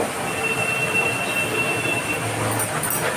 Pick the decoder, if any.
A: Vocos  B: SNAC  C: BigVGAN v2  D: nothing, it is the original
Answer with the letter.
D